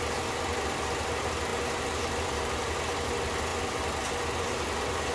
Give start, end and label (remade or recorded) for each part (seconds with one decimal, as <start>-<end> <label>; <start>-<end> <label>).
0.0-5.1 recorded